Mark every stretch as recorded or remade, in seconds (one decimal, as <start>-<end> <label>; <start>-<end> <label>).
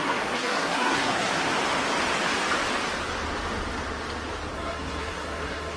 0.0-1.3 remade; 1.3-4.5 recorded; 4.5-5.8 remade